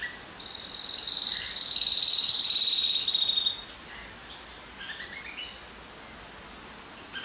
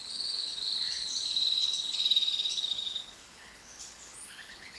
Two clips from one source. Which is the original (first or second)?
first